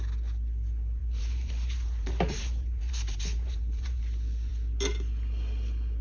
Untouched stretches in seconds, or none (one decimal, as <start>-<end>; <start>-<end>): 0.0-1.0; 4.0-6.0